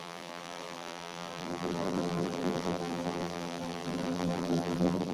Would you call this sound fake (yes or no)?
yes